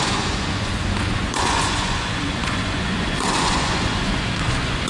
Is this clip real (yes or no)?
no